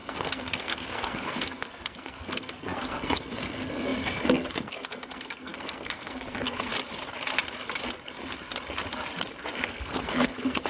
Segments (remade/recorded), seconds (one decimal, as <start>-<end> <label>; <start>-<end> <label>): 0.0-6.7 remade; 6.7-9.7 recorded; 9.7-10.7 remade